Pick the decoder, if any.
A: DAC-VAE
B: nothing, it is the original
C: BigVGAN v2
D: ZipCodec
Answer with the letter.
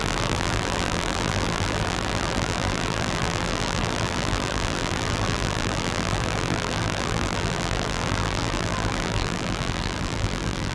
C